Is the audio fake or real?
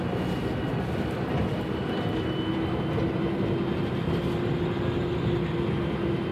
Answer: real